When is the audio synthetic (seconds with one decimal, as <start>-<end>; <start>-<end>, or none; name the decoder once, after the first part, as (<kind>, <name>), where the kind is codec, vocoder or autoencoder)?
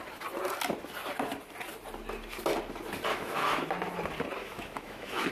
3.1-3.7 (autoencoder, DAC-VAE); 4.4-5.3